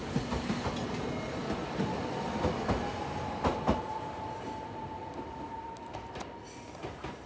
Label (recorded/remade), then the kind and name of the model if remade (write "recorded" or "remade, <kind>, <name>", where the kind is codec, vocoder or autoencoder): recorded